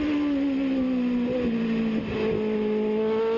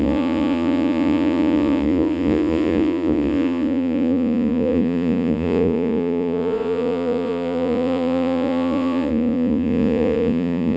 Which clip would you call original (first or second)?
first